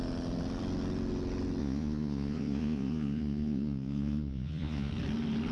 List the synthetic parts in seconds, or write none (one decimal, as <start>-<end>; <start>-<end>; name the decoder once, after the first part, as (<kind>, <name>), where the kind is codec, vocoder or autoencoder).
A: 1.6-4.9 (vocoder, Vocos)